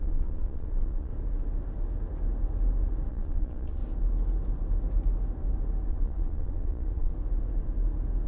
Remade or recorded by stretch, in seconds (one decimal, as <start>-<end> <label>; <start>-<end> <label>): 0.0-1.1 remade; 1.1-3.1 recorded; 3.1-3.8 remade; 3.8-5.9 recorded; 5.9-7.1 remade; 7.1-8.3 recorded